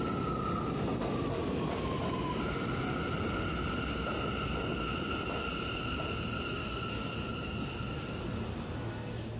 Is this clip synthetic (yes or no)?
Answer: no